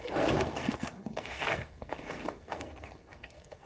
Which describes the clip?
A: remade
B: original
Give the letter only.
A